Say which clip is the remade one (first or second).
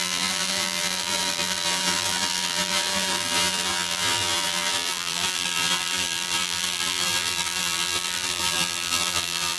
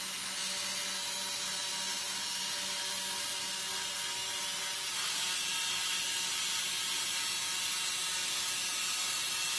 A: first